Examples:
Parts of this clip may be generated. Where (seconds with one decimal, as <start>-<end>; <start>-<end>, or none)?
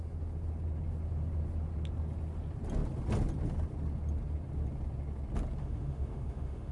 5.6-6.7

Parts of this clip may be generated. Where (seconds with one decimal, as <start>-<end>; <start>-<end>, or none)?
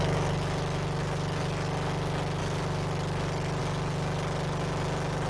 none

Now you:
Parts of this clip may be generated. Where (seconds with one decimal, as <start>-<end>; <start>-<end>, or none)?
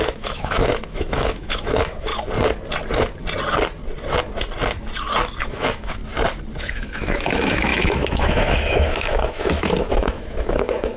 0.0-2.1; 5.4-6.0; 6.6-11.0